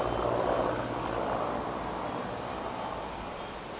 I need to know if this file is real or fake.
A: real